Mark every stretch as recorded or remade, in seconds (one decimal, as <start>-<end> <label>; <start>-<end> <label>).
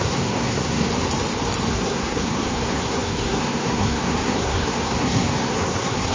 0.0-0.9 remade; 0.9-1.7 recorded; 1.7-6.1 remade